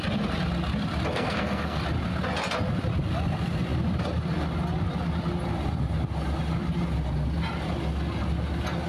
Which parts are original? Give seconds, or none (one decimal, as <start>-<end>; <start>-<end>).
0.0-1.1; 1.8-8.9